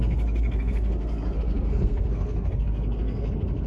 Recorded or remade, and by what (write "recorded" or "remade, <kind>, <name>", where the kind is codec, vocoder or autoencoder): remade, codec, SNAC